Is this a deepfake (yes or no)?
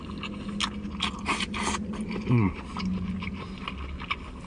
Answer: no